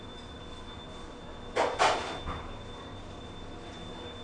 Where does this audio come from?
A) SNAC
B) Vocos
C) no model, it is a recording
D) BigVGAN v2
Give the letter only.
C